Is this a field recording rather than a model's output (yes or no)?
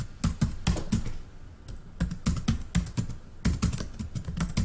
yes